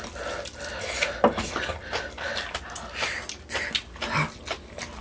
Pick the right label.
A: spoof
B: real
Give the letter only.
B